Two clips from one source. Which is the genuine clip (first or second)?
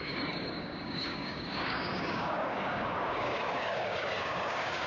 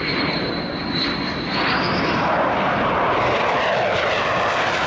second